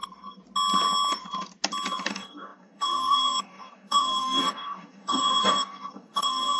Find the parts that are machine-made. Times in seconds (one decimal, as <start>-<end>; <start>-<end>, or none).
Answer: 2.1-6.6